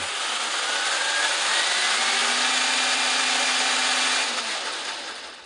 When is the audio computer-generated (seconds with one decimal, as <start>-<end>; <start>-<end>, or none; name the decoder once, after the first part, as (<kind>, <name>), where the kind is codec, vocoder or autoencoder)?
none